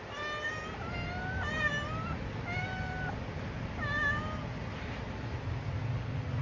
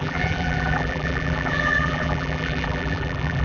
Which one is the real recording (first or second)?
first